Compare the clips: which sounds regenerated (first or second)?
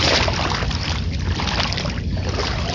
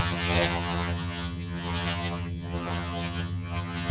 second